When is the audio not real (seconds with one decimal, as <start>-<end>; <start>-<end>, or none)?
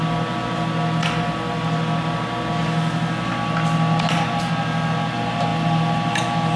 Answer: none